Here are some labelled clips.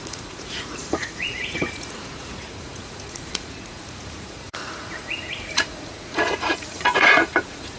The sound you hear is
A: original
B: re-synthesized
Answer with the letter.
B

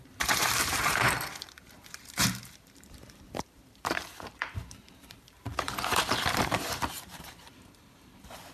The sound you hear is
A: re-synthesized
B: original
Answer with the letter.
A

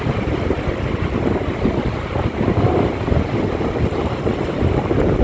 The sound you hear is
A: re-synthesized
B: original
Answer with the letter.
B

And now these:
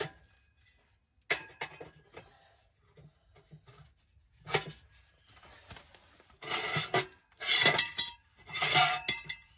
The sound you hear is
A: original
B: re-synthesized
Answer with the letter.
A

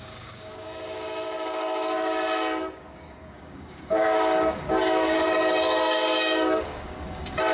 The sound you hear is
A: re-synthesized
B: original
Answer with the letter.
A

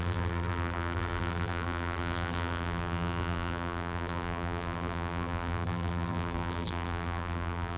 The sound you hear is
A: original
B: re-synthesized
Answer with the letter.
B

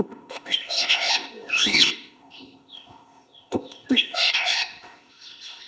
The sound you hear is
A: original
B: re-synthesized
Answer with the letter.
B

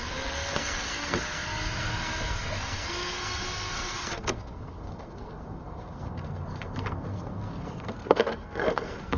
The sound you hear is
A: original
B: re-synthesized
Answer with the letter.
B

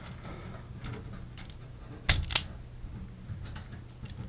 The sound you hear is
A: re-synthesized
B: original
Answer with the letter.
B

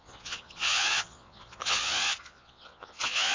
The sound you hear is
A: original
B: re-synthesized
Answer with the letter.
B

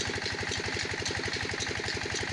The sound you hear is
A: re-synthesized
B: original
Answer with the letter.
B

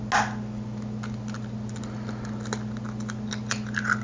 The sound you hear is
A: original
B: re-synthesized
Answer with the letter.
A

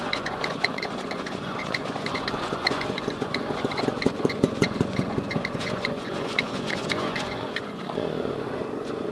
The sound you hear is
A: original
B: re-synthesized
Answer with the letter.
B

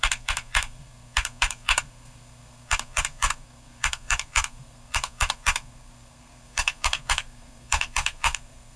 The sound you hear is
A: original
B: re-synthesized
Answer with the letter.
B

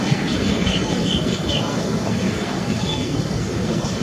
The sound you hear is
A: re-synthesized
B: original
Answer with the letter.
A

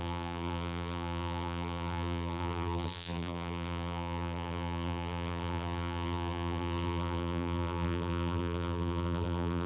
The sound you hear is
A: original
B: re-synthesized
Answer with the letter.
B